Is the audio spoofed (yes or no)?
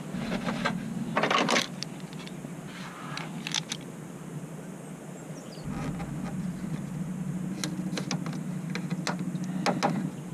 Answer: no